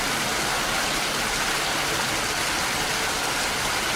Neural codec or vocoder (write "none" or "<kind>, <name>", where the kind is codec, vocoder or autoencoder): none